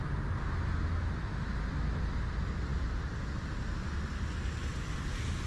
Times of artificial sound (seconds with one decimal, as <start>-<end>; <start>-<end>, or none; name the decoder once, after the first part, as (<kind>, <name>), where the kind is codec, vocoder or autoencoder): none